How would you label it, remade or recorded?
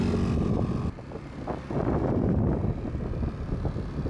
recorded